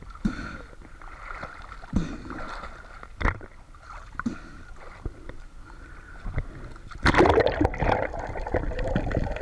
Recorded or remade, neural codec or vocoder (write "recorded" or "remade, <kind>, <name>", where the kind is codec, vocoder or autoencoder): recorded